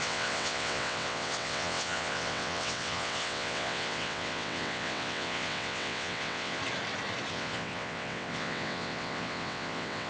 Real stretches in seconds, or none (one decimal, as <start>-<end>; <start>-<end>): 6.6-7.3